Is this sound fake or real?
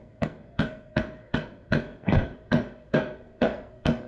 fake